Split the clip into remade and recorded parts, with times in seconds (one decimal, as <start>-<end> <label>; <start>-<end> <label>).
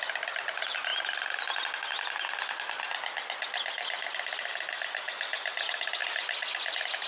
0.0-7.1 recorded